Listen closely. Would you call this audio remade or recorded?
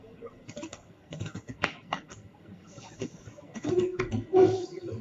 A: remade